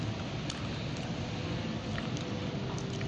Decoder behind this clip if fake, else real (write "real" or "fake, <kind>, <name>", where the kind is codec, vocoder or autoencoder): real